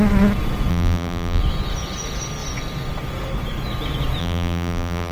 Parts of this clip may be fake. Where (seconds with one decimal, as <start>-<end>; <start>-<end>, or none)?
0.7-1.4; 4.2-5.1